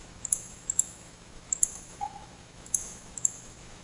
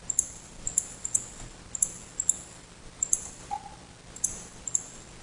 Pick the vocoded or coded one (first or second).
first